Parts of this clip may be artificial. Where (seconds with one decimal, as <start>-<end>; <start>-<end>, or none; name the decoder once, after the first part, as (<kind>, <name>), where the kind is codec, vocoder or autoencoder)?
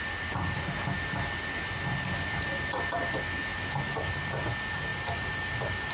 4.9-5.9 (vocoder, BigVGAN v2)